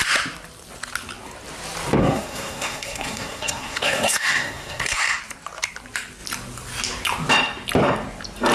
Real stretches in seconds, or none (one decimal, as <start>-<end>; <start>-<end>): 0.0-2.0; 5.2-8.5